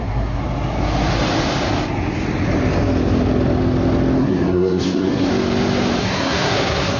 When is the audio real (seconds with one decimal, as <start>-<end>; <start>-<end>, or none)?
0.4-4.2; 5.3-6.0